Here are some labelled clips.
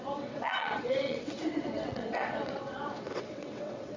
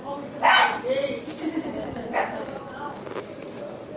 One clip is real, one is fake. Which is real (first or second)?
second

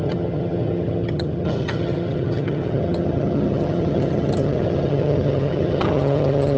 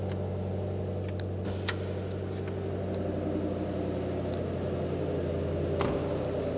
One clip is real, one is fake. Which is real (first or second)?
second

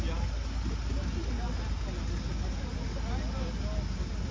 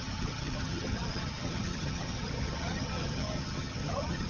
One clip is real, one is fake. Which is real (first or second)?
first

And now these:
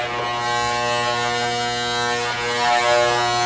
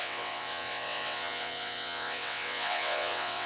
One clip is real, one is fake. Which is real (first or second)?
first